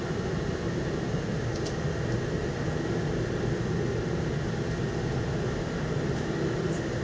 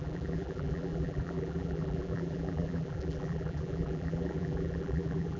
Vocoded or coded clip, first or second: second